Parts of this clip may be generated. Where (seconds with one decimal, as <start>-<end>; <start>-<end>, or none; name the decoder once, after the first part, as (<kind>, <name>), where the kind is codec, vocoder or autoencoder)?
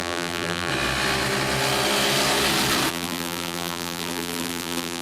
0.0-0.7 (vocoder, BigVGAN v2); 2.9-5.0